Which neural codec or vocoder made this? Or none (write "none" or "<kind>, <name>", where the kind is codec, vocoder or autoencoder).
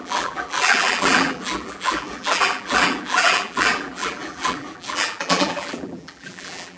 vocoder, BigVGAN v2